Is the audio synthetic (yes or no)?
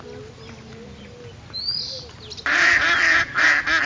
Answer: no